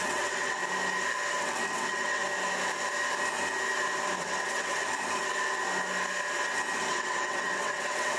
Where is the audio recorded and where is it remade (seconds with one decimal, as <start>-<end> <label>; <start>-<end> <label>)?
0.0-0.6 remade; 0.6-1.4 recorded; 1.4-2.2 remade; 2.2-4.2 recorded; 4.2-4.8 remade; 4.8-6.9 recorded; 6.9-8.2 remade